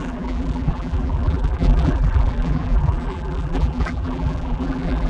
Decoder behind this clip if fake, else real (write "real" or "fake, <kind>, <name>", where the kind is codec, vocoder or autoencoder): fake, vocoder, BigVGAN v2